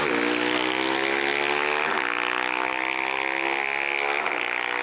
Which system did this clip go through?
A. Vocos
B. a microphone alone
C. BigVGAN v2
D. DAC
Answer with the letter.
B